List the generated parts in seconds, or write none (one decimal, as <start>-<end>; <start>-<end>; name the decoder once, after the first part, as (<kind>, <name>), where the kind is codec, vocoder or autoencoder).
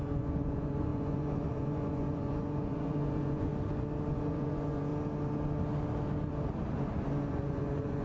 0.0-3.5 (vocoder, Vocos); 4.1-4.9; 7.3-8.0